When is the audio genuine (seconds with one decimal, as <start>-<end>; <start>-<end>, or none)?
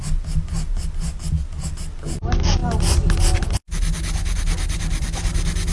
0.0-5.7